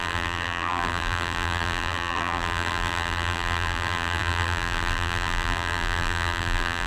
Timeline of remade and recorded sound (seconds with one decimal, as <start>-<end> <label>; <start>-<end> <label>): 0.0-6.9 remade